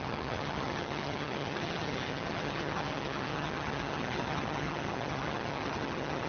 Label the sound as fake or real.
fake